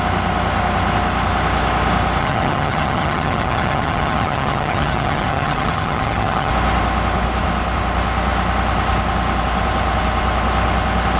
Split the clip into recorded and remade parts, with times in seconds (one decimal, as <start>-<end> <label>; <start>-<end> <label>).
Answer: 0.0-2.2 recorded; 2.2-6.5 remade; 6.5-11.2 recorded